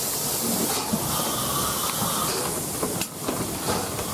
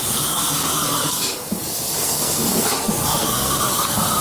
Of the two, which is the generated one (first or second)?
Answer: second